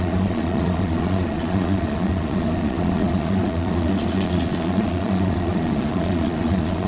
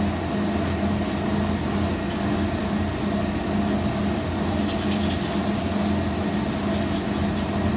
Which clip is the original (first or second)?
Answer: second